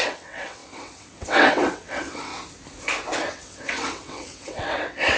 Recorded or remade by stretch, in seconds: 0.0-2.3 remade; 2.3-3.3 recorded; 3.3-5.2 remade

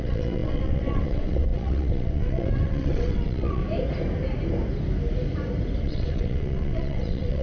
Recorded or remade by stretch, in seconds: 0.0-3.6 remade; 3.6-5.8 recorded; 5.8-7.4 remade